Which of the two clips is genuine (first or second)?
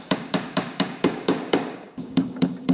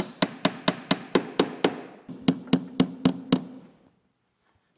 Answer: second